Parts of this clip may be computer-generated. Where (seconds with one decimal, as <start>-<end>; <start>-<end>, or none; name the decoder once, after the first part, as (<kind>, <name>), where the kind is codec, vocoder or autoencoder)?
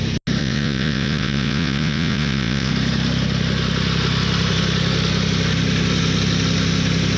0.4-2.7 (vocoder, Vocos)